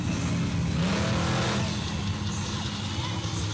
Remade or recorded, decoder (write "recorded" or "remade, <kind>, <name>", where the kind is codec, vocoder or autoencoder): recorded